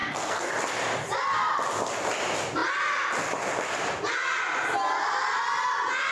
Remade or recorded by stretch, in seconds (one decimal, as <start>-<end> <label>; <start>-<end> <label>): 0.0-0.5 remade; 0.5-6.1 recorded